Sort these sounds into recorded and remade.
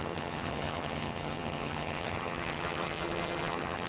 remade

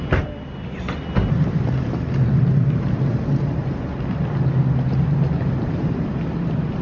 recorded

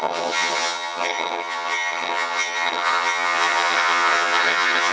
remade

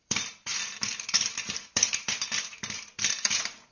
remade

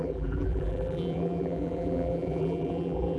remade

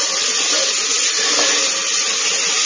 recorded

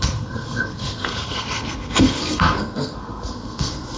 remade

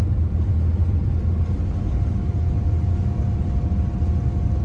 recorded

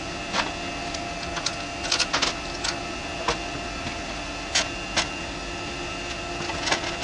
recorded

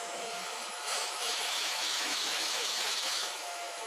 remade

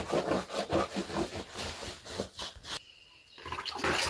recorded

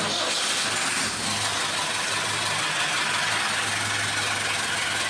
recorded